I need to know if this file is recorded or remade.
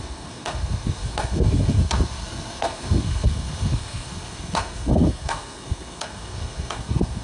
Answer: remade